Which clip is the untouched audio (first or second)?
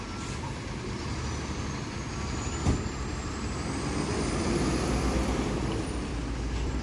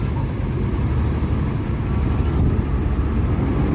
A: second